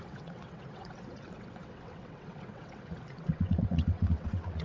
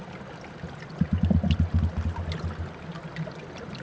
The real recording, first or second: second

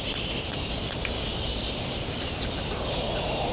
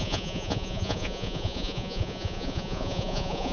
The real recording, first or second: first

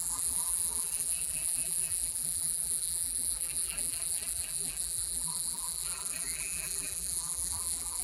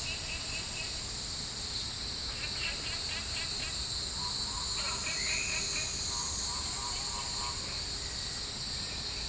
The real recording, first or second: second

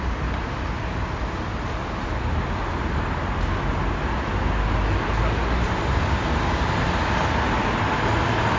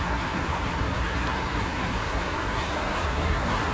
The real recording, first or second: first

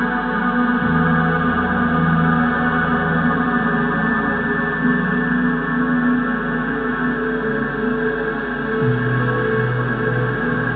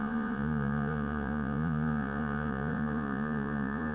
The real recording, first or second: first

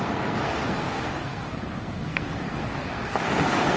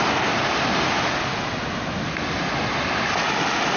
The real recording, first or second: second